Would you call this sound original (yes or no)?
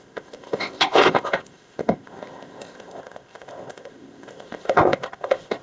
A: no